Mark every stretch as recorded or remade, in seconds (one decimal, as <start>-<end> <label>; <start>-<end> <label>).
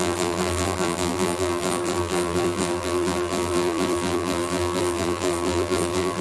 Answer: 0.0-6.2 remade